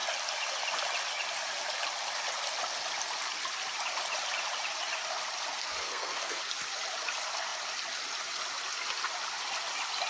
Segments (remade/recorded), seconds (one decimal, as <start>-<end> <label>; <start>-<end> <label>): 0.0-5.6 recorded; 5.6-6.4 remade; 6.4-10.1 recorded